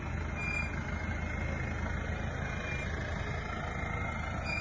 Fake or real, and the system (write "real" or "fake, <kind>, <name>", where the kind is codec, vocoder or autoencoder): real